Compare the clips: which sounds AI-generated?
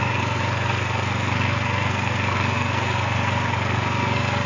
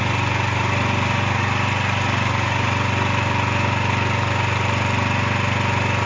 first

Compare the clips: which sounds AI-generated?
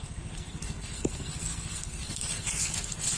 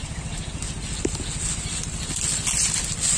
first